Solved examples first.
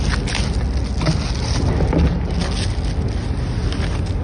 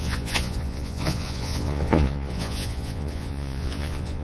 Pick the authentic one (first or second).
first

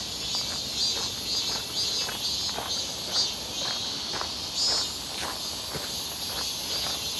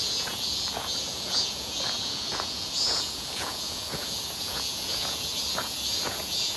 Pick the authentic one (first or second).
first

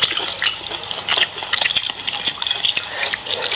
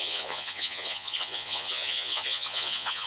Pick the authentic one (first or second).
first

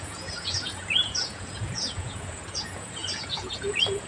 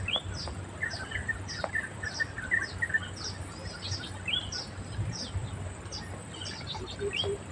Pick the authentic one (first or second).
second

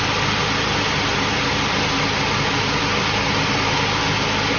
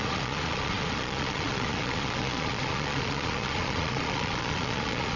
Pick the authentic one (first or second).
first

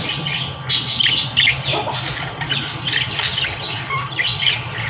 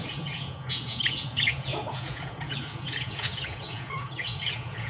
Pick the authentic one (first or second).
first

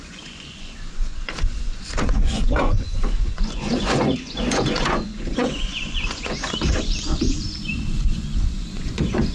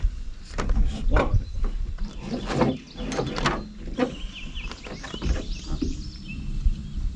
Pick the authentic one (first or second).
second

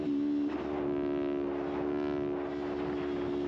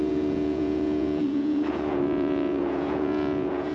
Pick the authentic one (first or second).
first